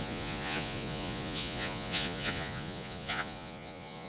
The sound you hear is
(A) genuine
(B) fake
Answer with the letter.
B